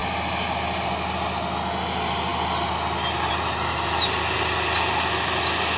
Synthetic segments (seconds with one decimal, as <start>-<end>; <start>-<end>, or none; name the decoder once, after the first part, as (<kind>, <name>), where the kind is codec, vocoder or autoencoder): none